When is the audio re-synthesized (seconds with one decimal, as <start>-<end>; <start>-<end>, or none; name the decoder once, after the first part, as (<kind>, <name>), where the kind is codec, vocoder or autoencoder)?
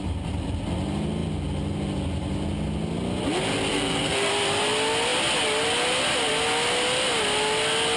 3.7-4.3 (codec, SNAC)